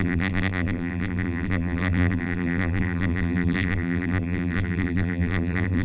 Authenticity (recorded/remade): remade